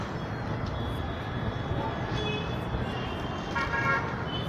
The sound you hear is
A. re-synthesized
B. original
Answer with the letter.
B